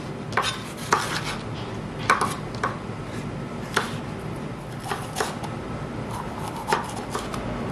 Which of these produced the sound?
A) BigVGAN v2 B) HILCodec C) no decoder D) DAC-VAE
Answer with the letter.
C